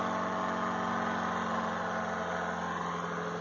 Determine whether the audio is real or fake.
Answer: real